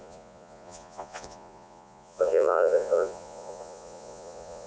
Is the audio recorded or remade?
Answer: remade